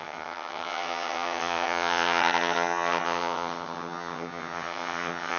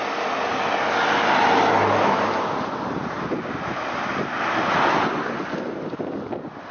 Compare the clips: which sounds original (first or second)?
second